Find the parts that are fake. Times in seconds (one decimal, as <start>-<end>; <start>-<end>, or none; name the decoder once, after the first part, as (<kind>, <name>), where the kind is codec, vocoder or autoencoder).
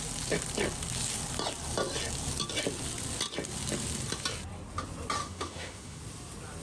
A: 5.2-6.0 (autoencoder, DAC-VAE)